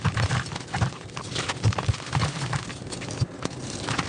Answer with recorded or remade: recorded